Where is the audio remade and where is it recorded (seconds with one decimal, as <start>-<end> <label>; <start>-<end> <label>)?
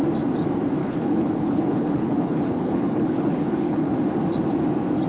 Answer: 0.0-0.8 recorded; 0.8-3.9 remade; 3.9-5.1 recorded